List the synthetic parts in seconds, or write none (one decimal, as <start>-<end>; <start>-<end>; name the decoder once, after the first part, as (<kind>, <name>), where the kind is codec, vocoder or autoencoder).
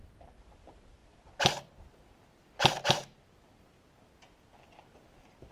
none